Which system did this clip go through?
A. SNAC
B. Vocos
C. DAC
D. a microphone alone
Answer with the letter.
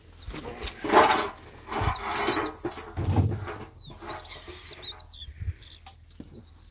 D